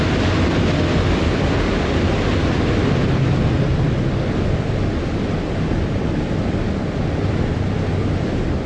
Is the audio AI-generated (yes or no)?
no